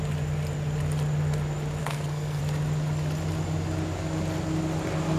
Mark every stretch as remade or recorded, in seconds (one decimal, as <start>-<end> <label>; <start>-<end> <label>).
0.0-1.8 recorded; 1.8-2.4 remade; 2.4-5.2 recorded